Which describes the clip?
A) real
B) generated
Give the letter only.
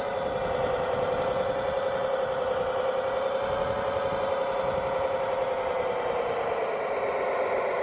A